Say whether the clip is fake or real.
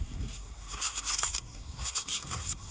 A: fake